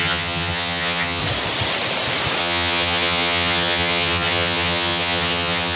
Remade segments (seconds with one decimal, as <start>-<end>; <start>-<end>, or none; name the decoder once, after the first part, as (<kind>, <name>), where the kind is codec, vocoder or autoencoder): 0.0-1.2 (vocoder, HiFi-GAN); 2.4-5.8